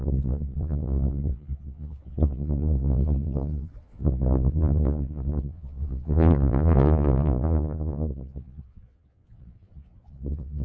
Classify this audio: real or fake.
fake